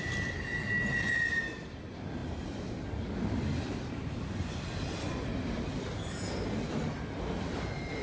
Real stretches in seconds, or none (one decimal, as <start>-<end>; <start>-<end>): 0.0-8.0